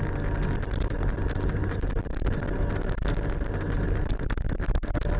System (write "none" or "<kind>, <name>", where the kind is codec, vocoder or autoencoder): none